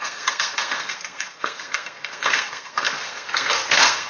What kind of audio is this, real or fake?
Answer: fake